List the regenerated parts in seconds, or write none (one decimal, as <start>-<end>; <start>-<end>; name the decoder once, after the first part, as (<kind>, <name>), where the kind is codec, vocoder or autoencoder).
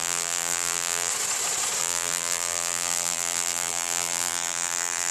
0.0-1.1 (vocoder, BigVGAN v2); 1.8-5.1